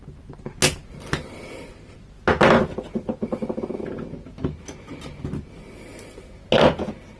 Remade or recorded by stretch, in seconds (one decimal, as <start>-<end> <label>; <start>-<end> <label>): 0.0-7.2 recorded